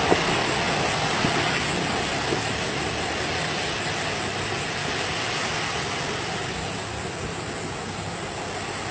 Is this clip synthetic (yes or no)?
no